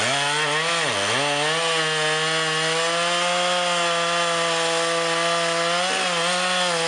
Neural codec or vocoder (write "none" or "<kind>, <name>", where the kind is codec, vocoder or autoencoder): none